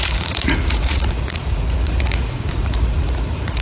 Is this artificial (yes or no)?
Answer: yes